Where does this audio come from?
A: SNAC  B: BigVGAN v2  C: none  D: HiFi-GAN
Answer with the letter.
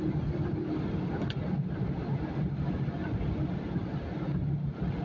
C